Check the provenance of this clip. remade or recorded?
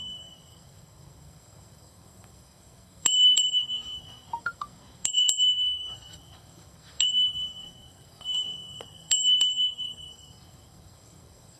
remade